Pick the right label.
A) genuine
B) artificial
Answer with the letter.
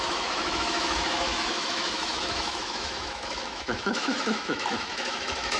B